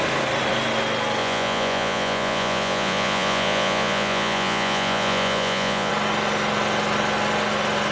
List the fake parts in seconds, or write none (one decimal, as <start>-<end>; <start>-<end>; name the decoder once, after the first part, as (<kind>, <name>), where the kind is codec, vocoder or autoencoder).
1.2-5.9 (vocoder, Vocos)